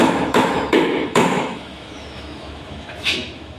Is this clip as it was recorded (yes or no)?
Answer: no